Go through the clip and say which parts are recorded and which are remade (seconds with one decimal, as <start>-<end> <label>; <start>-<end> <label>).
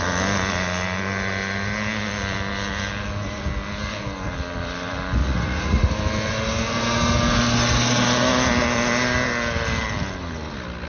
0.0-5.2 recorded; 5.2-5.9 remade; 5.9-10.9 recorded